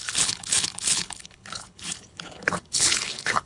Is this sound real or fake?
fake